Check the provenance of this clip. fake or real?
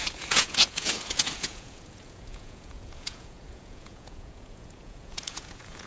fake